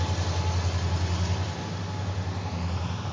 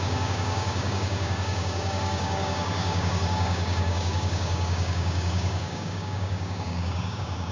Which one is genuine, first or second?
first